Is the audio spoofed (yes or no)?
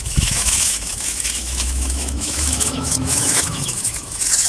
yes